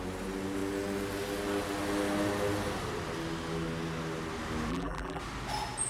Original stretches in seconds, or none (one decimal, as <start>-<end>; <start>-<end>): 0.0-4.7; 5.2-5.9